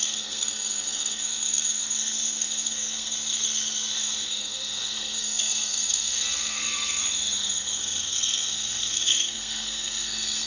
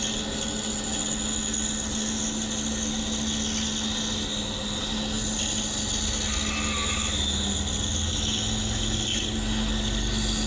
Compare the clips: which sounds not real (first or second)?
first